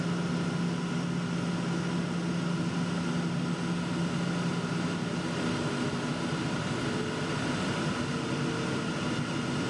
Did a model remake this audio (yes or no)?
no